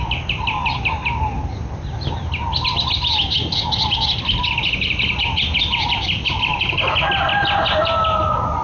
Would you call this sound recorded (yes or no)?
yes